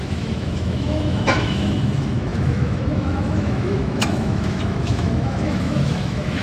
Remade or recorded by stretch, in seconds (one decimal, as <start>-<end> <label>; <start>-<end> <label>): 0.0-6.4 remade